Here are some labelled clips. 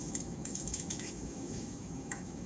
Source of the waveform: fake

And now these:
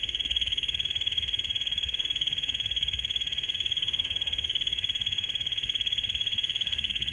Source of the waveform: fake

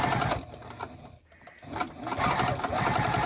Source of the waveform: real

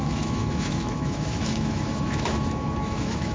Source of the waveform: fake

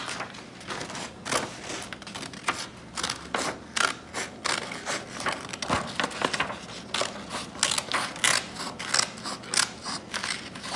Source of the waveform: real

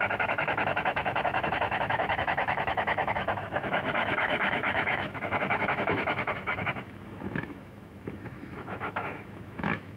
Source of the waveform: fake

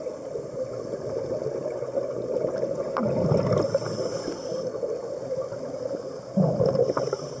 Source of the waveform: real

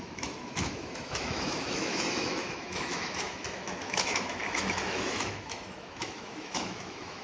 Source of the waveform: fake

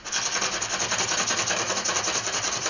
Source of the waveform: real